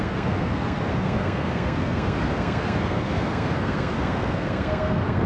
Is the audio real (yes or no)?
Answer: no